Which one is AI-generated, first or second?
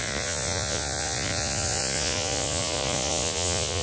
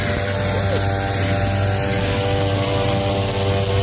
first